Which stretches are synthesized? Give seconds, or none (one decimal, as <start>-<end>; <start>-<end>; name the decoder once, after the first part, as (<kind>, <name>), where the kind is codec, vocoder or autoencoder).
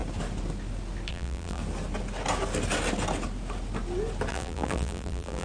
1.1-1.6 (vocoder, BigVGAN v2); 4.3-5.4